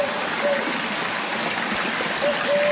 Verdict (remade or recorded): recorded